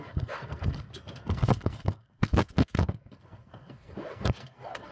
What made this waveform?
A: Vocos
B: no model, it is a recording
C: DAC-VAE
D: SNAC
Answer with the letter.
D